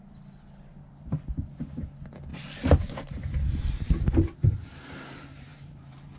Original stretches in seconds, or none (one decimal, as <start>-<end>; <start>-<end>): 0.0-0.7; 1.4-2.3